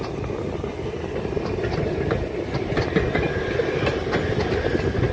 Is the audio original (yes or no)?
yes